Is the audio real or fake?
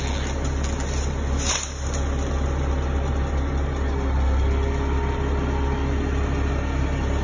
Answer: real